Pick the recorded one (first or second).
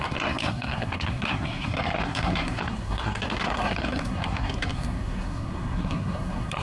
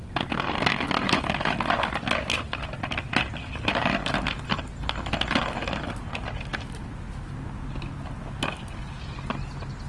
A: second